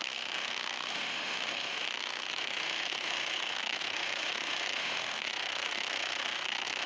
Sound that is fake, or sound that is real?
fake